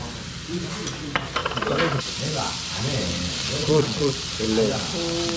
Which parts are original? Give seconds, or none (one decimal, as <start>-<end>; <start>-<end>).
0.0-3.6; 4.1-5.4